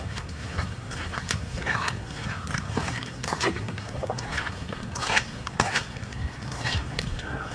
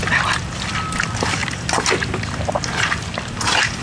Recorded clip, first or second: second